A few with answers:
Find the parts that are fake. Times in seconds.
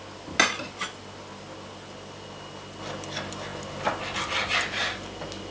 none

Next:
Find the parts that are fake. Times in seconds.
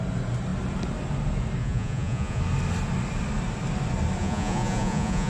1.6-2.4 (vocoder, Vocos); 4.2-5.3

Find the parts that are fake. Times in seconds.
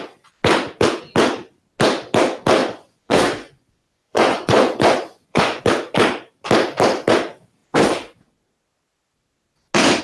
2.6-5.6 (vocoder, Vocos)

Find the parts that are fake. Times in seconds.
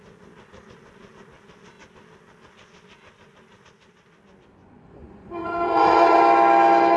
4.6-6.2 (vocoder, Vocos)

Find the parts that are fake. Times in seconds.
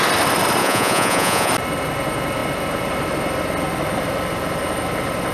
0.6-1.5 (vocoder, Vocos)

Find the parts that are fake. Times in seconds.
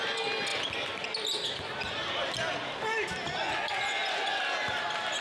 3.4-4.4 (vocoder, Vocos)